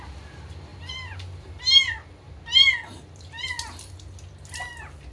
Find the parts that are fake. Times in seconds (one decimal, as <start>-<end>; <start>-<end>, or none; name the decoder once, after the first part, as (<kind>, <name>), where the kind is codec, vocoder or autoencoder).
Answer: none